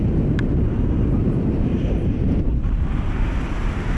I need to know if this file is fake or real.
fake